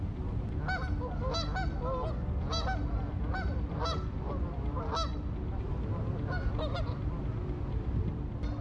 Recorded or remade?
recorded